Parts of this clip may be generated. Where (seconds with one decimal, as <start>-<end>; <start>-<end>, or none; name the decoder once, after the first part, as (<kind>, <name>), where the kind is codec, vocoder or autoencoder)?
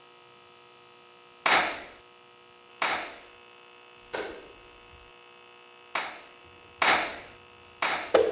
none